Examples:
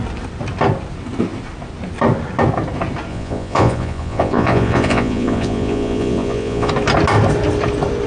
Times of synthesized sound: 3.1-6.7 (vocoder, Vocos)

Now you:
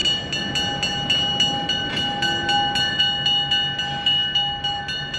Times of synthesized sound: none

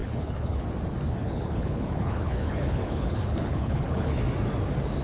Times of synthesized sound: 0.0-0.6 (codec, HILCodec); 1.2-4.2

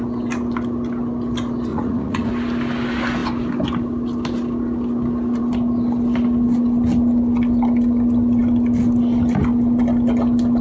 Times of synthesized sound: 1.7-2.3 (vocoder, Vocos)